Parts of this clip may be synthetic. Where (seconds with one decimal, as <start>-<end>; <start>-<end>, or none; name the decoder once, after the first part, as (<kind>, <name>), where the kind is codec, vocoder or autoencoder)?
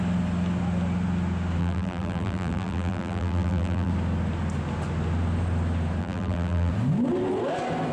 1.6-3.9 (vocoder, BigVGAN v2); 6.0-6.7